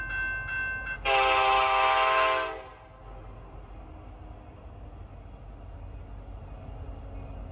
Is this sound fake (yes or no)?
no